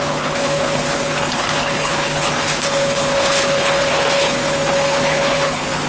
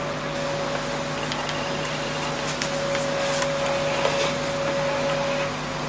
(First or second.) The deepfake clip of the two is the first